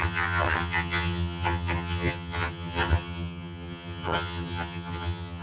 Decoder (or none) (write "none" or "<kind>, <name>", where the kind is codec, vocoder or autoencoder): vocoder, HiFi-GAN